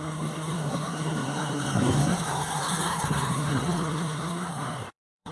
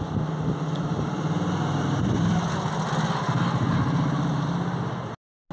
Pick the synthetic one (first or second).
first